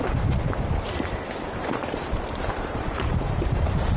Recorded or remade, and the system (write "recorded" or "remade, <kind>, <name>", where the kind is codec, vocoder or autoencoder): remade, vocoder, BigVGAN v2